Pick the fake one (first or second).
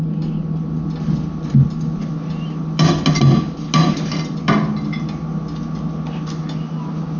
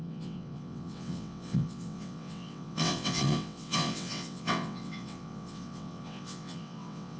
second